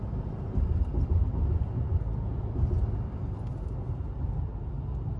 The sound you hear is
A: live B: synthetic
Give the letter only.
A